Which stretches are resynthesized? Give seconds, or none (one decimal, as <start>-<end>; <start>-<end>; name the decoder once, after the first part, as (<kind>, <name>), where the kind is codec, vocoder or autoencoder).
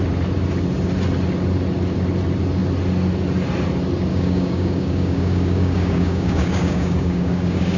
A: 4.1-7.8 (codec, DAC)